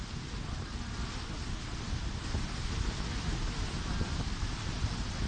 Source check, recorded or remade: recorded